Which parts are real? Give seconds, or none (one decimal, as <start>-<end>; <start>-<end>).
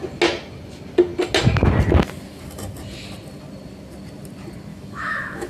0.0-4.7